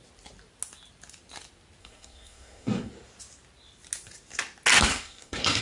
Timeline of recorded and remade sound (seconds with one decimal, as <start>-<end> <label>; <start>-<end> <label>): 0.0-1.8 recorded; 1.8-2.9 remade; 2.9-4.9 recorded; 4.9-5.6 remade